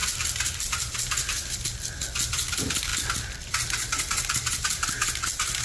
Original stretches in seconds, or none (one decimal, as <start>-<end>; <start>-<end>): 0.0-5.6